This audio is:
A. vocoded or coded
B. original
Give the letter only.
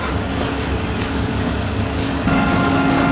A